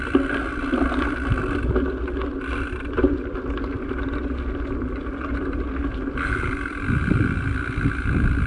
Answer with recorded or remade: recorded